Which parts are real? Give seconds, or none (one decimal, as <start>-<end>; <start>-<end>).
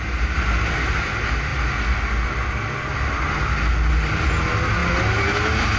0.0-5.8